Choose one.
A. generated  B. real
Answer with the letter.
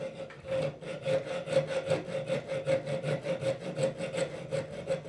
B